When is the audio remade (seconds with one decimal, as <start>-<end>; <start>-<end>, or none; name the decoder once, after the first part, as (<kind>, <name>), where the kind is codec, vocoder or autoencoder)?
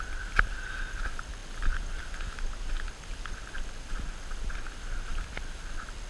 none